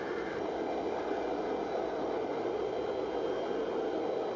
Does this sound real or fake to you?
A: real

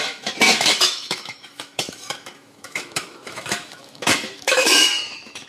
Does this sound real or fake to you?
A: fake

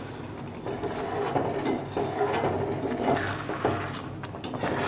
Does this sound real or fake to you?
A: real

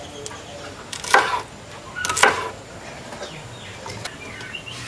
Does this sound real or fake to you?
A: real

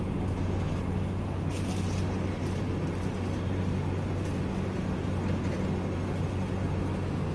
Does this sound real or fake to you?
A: real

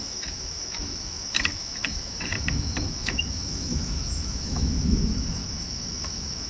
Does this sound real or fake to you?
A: fake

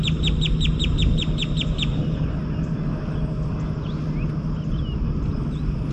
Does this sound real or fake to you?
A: real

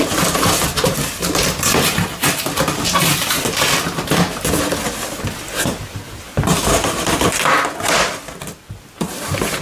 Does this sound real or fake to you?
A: real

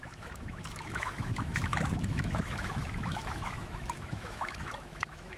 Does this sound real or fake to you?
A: fake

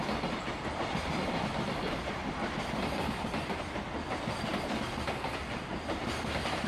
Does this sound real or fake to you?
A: real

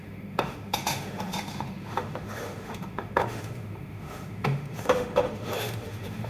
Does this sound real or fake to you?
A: fake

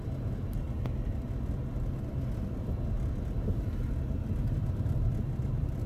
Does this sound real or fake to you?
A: real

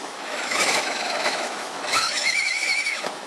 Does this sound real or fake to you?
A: fake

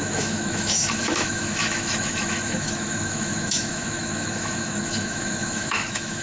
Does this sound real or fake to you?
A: fake